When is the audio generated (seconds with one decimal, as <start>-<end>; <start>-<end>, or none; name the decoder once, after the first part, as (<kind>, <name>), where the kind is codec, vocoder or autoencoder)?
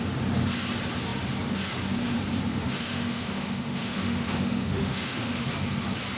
2.5-5.5 (autoencoder, DAC-VAE)